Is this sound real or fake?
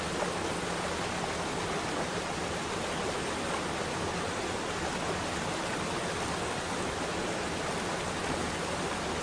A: real